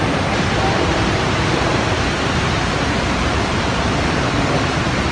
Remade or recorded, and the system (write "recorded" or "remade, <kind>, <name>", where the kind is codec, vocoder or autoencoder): remade, vocoder, BigVGAN v2